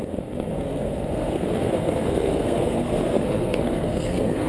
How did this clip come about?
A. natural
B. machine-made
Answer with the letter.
B